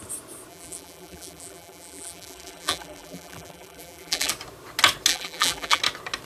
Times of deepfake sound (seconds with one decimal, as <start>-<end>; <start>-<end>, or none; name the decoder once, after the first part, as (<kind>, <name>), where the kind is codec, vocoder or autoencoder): 0.5-4.3 (vocoder, BigVGAN v2); 5.1-5.8